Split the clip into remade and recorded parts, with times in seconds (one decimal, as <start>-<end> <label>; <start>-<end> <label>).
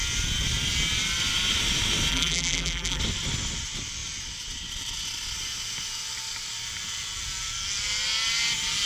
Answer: 0.0-2.1 recorded; 2.1-3.0 remade; 3.0-8.9 recorded